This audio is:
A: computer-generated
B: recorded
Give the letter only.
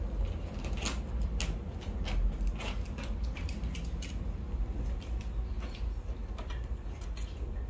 B